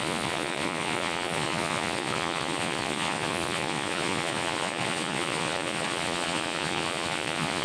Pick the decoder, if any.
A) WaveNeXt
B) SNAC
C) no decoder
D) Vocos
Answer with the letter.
D